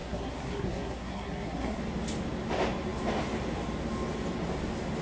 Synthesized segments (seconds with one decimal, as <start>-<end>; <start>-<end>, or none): 0.0-1.8

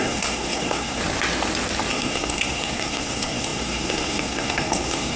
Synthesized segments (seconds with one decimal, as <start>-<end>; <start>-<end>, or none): 0.0-1.0; 1.9-5.2